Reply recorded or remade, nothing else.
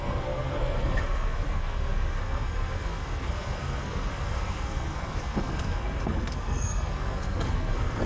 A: remade